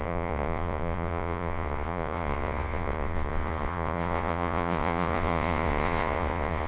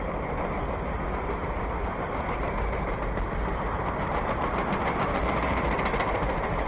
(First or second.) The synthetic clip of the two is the first